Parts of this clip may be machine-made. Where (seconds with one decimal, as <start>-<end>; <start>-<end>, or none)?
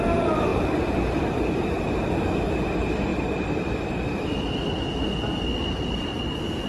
0.5-2.1; 3.1-3.7